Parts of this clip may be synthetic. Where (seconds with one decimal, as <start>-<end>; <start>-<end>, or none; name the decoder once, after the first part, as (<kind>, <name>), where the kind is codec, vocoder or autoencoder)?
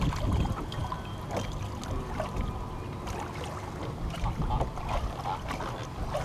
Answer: none